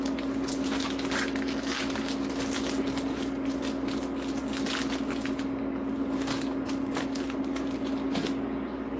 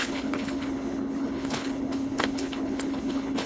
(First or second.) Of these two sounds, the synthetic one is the second